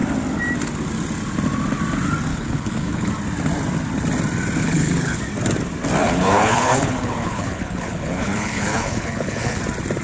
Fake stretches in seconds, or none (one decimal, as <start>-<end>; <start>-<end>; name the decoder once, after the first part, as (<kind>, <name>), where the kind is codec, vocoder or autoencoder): 2.3-3.1 (codec, HILCodec); 4.6-5.2; 6.0-9.6